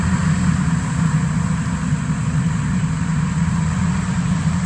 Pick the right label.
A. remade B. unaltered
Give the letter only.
B